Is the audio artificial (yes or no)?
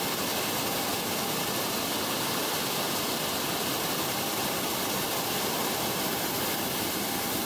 no